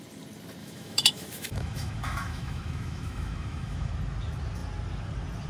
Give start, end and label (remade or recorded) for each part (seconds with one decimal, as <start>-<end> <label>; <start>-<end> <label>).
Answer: 0.0-0.6 recorded; 0.6-3.9 remade; 3.9-5.5 recorded